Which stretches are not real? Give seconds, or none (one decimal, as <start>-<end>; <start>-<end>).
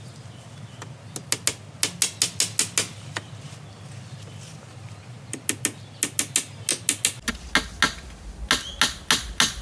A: none